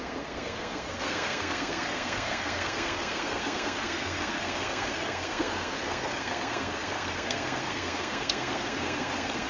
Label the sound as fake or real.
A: fake